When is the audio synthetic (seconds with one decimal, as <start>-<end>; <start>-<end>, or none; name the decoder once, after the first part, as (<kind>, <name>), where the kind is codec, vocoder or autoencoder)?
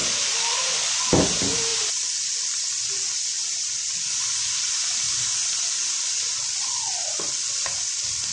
0.0-8.3 (vocoder, BigVGAN v2)